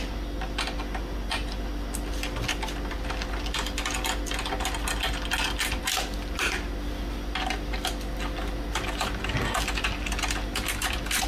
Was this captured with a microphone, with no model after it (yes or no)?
yes